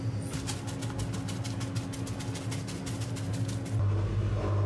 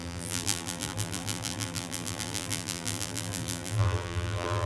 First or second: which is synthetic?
second